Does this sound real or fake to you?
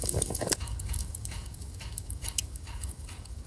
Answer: fake